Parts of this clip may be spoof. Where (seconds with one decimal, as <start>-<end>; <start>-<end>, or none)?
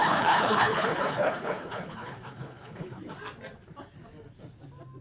0.0-3.0